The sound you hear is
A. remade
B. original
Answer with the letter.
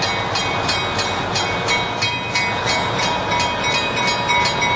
B